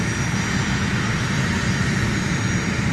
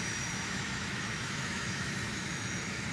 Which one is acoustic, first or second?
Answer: first